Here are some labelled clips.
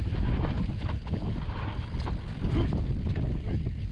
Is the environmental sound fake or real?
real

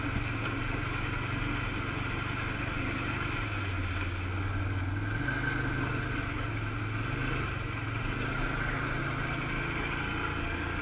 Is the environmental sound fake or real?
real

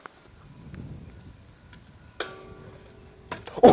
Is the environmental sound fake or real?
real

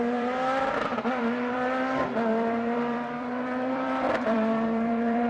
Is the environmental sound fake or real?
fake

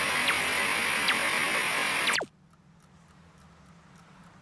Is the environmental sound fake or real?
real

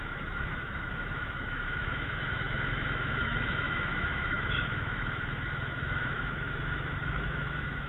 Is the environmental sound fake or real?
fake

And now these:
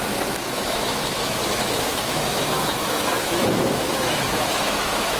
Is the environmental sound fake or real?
fake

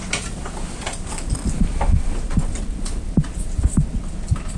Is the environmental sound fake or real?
real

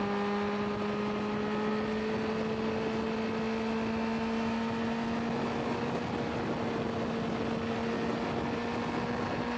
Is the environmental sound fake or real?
real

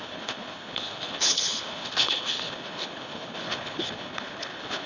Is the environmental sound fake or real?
fake